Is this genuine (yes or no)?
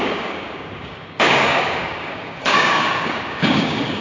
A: no